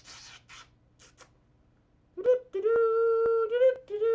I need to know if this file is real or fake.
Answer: real